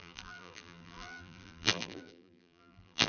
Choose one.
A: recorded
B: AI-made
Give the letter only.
B